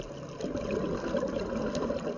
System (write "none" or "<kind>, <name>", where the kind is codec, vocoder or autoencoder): none